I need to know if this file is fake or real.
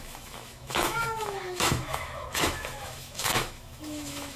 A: fake